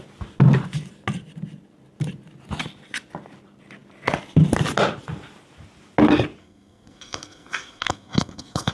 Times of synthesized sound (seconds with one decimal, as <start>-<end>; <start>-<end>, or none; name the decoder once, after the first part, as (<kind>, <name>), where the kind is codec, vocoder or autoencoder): 6.4-8.7 (codec, SNAC)